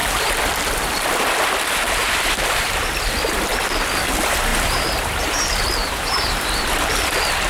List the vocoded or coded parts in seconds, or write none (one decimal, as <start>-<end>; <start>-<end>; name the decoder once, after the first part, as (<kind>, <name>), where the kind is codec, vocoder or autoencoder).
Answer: 4.5-5.2 (vocoder, BigVGAN v2); 5.8-7.1